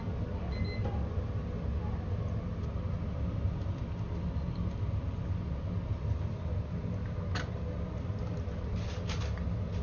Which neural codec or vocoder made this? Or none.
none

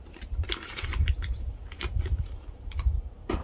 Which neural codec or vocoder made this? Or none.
vocoder, BigVGAN v2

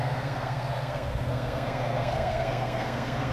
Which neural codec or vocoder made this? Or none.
codec, SNAC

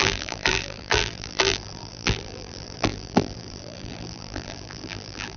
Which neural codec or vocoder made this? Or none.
vocoder, BigVGAN v2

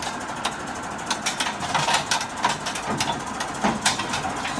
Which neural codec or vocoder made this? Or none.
none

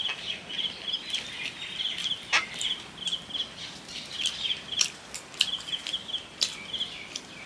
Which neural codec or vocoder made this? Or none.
vocoder, BigVGAN v2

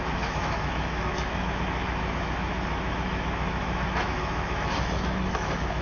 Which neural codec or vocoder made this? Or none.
autoencoder, DAC-VAE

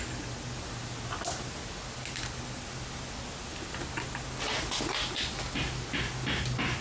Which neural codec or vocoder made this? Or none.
none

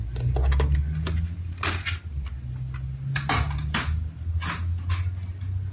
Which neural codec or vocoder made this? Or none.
none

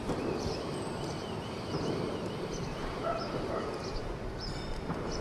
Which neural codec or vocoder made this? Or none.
vocoder, BigVGAN v2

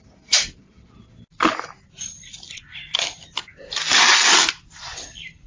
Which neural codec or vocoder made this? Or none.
none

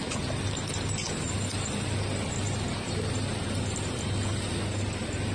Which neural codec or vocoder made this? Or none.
none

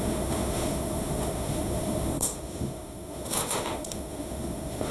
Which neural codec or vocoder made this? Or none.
autoencoder, DAC-VAE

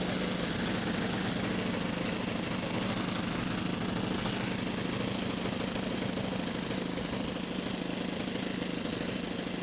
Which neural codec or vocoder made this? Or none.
none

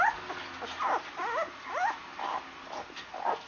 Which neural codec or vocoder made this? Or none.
none